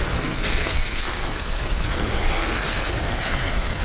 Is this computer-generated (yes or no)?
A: yes